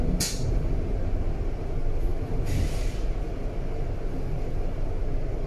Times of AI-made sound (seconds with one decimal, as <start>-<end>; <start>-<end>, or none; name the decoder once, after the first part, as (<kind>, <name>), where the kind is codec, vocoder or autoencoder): none